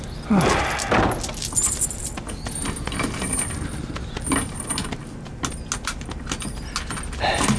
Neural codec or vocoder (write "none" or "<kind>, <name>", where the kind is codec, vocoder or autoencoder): none